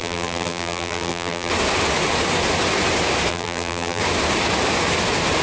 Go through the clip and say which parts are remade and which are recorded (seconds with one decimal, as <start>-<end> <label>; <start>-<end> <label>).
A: 0.0-1.5 remade; 1.5-3.3 recorded; 3.3-4.0 remade; 4.0-5.4 recorded